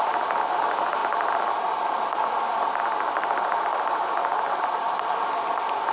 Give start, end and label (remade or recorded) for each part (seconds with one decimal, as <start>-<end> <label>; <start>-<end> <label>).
0.0-5.9 recorded